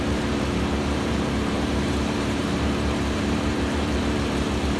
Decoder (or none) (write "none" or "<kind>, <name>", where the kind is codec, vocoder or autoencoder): vocoder, BigVGAN v2